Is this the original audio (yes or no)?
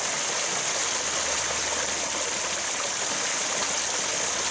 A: yes